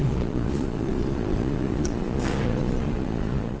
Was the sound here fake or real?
fake